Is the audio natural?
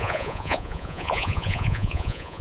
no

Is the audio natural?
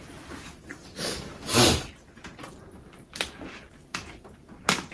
yes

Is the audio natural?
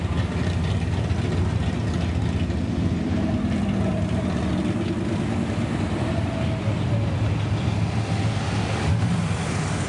yes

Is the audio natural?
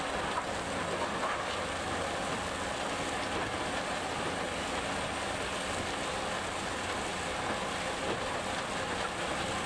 yes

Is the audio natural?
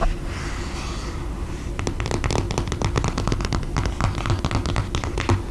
yes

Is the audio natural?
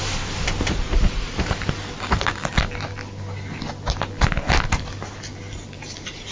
yes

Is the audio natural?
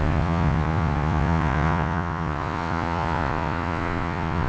no